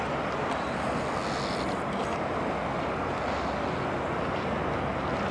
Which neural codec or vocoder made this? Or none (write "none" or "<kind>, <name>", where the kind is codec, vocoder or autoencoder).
none